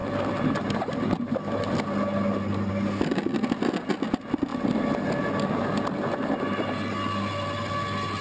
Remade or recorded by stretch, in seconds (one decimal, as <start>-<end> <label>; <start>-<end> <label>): 0.0-8.2 recorded